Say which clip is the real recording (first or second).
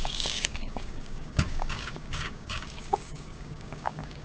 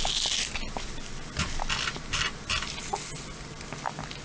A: second